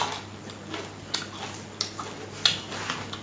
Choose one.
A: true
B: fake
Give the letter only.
A